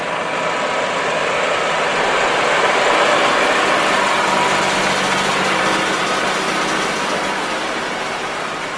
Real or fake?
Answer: real